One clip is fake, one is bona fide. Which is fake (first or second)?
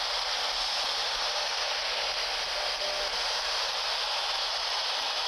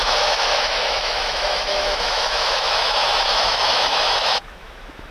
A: second